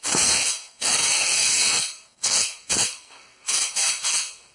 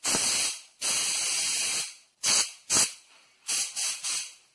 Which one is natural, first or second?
second